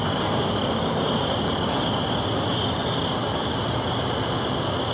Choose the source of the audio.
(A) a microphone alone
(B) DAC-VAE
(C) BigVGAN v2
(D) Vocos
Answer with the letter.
A